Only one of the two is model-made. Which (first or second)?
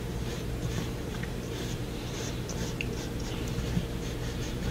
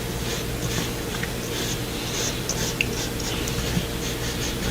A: first